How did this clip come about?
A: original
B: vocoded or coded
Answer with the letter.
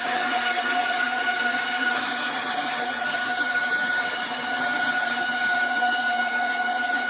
B